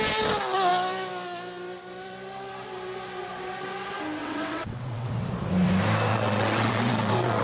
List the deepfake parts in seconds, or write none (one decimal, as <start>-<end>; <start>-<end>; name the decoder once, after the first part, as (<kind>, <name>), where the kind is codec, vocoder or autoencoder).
4.2-5.1 (vocoder, WaveNeXt); 6.1-7.4